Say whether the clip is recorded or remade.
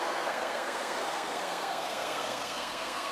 remade